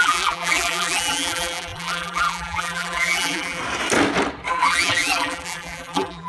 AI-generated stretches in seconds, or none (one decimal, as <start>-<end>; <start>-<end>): 0.0-3.6; 4.5-6.3